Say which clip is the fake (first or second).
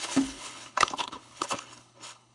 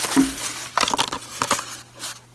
first